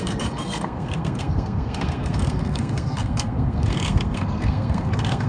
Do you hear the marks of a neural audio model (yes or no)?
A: yes